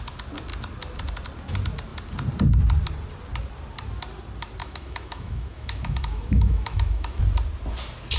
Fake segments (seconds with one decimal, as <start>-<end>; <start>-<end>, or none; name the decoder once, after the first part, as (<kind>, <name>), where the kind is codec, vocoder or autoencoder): 4.6-7.2 (autoencoder, DAC-VAE)